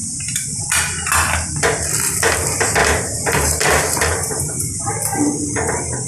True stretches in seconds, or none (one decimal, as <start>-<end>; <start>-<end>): 0.6-2.8; 4.9-6.1